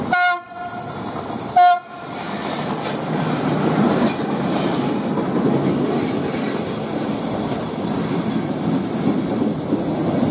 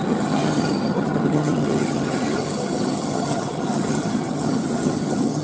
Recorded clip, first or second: first